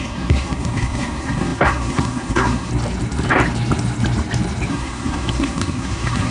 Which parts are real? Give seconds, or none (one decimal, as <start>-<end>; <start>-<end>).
2.7-4.7